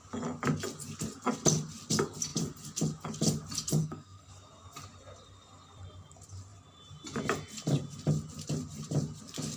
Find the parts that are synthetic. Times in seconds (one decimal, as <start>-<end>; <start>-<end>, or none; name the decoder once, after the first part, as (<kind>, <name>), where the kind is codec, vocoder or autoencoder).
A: 3.8-4.3 (codec, SNAC)